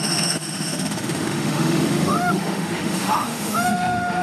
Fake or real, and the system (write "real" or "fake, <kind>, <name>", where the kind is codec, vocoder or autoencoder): fake, autoencoder, DAC-VAE